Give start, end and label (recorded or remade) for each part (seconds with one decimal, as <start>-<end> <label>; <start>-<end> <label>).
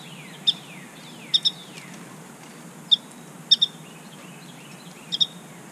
0.0-5.7 recorded